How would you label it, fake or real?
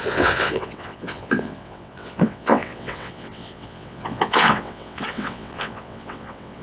fake